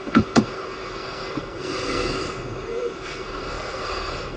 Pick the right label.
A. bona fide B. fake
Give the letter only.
B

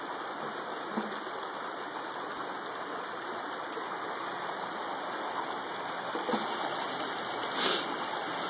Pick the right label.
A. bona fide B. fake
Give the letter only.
A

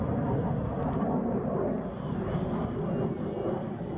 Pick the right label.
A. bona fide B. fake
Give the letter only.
A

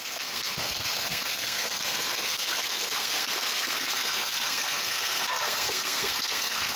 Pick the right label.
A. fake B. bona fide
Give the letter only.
A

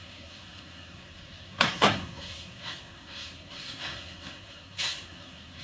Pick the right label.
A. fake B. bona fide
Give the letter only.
A